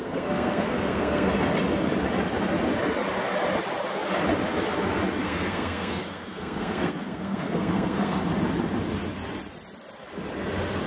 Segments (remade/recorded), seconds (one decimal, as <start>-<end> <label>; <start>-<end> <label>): 0.0-1.3 remade; 1.3-5.2 recorded; 5.2-8.2 remade; 8.2-10.9 recorded

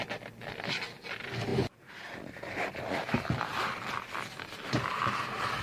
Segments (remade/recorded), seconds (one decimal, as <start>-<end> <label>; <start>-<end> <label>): 0.0-5.6 recorded

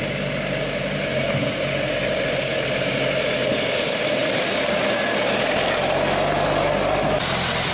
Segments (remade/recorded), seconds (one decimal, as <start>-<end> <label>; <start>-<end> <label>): 0.0-7.7 recorded

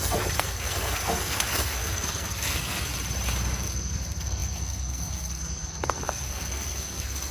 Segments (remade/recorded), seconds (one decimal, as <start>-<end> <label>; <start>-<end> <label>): 0.0-2.9 remade; 2.9-3.5 recorded; 3.5-7.3 remade

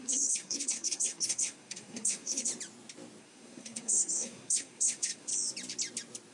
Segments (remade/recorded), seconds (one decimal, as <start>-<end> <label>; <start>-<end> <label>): 0.0-2.5 remade; 2.5-3.2 recorded; 3.2-5.3 remade; 5.3-6.3 recorded

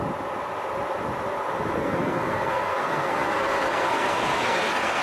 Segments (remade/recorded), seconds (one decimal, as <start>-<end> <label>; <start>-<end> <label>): 0.0-1.8 recorded; 1.8-5.0 remade

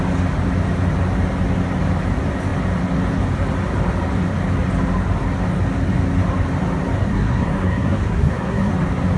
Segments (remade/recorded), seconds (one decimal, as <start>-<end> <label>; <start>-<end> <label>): 0.0-7.1 recorded; 7.1-8.7 remade; 8.7-9.2 recorded